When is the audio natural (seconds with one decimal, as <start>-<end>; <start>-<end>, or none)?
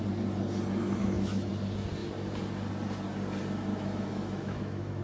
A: 0.0-1.0; 1.5-3.7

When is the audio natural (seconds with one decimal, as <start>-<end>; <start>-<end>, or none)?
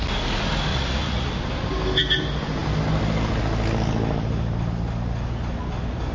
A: 0.0-0.7; 1.3-6.1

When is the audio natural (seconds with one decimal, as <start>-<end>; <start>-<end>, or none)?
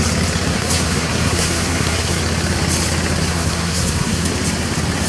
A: 0.0-0.5; 2.2-3.3; 4.3-5.1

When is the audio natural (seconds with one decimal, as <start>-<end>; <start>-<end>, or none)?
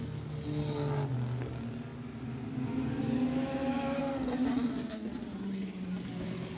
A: 0.0-6.6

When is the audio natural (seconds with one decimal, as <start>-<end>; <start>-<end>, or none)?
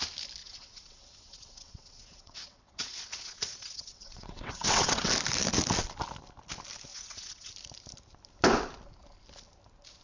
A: 0.0-0.4; 5.1-6.9; 7.5-10.0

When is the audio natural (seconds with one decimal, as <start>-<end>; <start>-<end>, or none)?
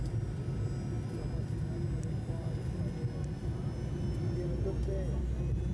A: 0.0-5.7